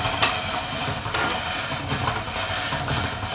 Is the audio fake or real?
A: real